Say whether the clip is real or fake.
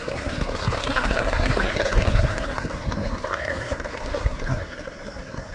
fake